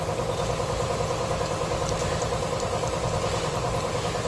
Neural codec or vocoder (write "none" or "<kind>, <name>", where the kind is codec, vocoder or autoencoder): none